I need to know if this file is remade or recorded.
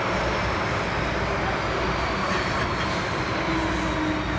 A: recorded